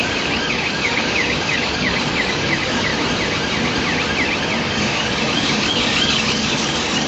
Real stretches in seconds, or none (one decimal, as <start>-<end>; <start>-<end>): 2.9-4.6

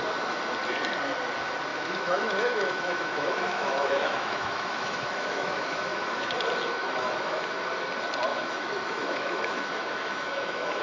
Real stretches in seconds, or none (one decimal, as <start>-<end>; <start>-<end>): 0.0-1.7; 6.3-6.8; 7.4-8.3

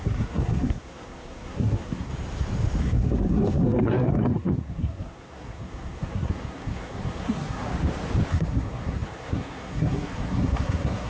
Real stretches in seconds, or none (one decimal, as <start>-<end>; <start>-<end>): 2.1-2.8; 7.7-8.3

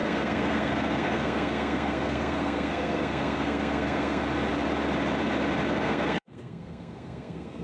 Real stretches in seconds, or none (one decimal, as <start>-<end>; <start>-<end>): 4.2-5.7

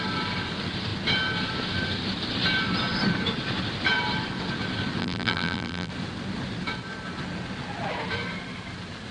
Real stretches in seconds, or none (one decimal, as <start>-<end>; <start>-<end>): 0.0-5.0; 5.9-9.1

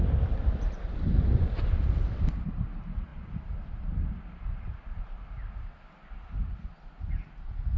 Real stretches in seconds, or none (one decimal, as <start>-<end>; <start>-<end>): 0.0-7.8